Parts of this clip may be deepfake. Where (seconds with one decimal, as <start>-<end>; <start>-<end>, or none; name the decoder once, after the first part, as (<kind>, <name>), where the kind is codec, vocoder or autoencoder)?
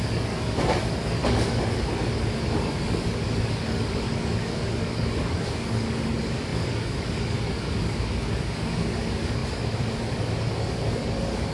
0.0-11.5 (codec, DAC)